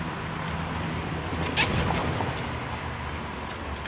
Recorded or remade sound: recorded